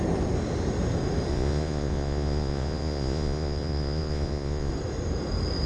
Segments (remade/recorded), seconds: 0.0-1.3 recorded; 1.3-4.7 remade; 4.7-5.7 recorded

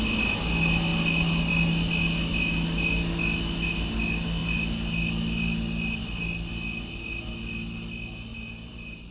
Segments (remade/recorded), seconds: 0.0-8.3 recorded; 8.3-9.1 remade

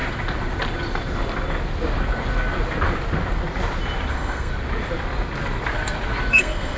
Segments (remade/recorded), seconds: 0.0-4.1 recorded; 4.1-4.5 remade; 4.5-6.3 recorded; 6.3-6.8 remade

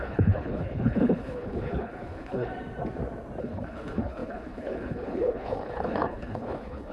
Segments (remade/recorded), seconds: 0.0-2.5 remade; 2.5-3.4 recorded; 3.4-6.9 remade

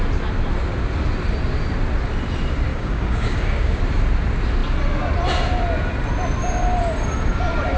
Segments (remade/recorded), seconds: 0.0-2.7 recorded; 2.7-3.8 remade; 3.8-7.8 recorded

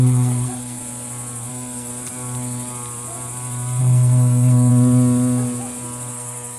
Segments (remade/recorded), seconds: 0.0-0.8 remade; 0.8-1.5 recorded; 1.5-1.9 remade; 1.9-3.8 recorded; 3.8-4.7 remade; 4.7-6.1 recorded; 6.1-6.6 remade

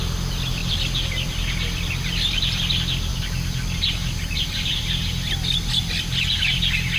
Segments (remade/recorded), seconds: 0.0-7.0 recorded

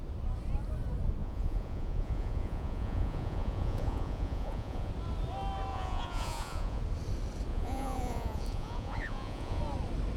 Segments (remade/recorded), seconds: 0.0-1.2 recorded; 1.2-4.9 remade; 4.9-5.7 recorded; 5.7-6.8 remade; 6.8-7.5 recorded; 7.5-9.6 remade; 9.6-10.2 recorded